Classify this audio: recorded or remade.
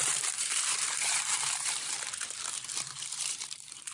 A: remade